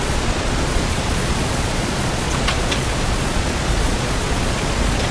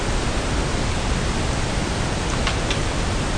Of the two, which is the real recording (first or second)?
second